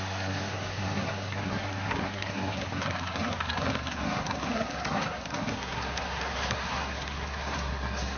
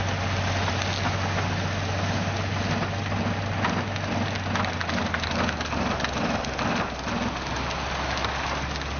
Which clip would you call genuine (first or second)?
second